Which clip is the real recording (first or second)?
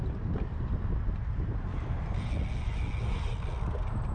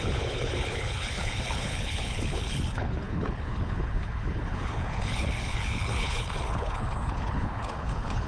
first